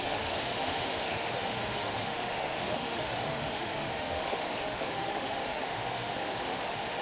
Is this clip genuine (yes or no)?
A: no